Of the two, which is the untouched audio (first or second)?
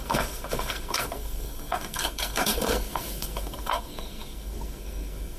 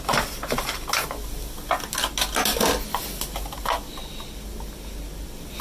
second